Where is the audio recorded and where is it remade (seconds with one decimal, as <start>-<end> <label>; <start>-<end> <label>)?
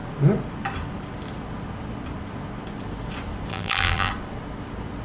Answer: 0.0-3.5 recorded; 3.5-4.1 remade; 4.1-5.0 recorded